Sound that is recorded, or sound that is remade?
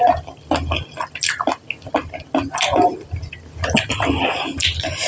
recorded